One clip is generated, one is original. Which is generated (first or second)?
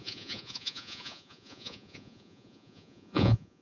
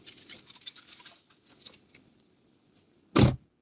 first